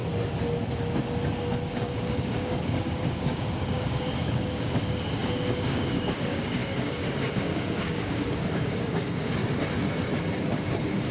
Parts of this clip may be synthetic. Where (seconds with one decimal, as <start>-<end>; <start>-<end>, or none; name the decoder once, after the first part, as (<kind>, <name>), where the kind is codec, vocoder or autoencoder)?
1.7-9.4 (codec, DAC)